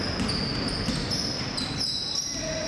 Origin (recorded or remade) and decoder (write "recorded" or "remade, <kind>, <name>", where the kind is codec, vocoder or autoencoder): recorded